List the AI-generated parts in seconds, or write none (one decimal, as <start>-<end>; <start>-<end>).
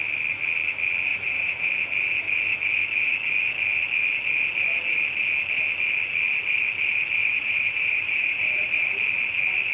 1.1-1.7; 7.2-8.9